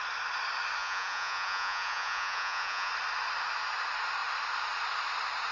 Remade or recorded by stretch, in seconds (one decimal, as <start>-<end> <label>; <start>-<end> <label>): 0.0-0.8 recorded; 0.8-2.9 remade; 2.9-5.5 recorded